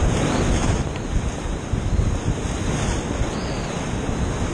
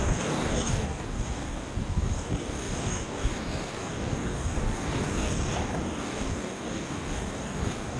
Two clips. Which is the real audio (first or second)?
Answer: first